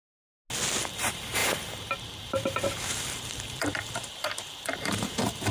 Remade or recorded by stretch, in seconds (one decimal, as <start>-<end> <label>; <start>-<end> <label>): 0.0-0.8 recorded; 0.8-5.5 remade